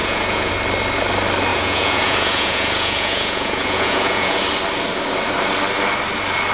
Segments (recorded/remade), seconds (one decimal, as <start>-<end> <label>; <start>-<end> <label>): 0.0-0.5 remade; 0.5-1.5 recorded; 1.5-4.4 remade; 4.4-6.5 recorded